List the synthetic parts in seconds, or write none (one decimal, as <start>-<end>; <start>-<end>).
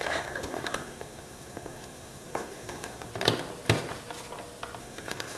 0.0-3.1; 4.8-5.4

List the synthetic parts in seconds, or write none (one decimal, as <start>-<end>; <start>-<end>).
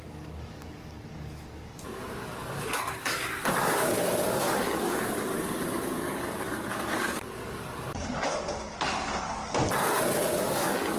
0.0-9.4; 10.3-11.0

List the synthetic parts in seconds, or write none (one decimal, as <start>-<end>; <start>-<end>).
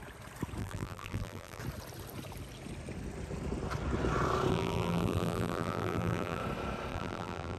0.6-1.6; 4.5-6.4; 6.9-7.6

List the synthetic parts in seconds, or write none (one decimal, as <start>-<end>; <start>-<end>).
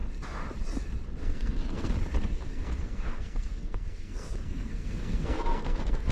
1.2-1.9; 2.3-6.1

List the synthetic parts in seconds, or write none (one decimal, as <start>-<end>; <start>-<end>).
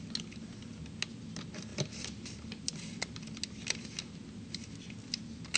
none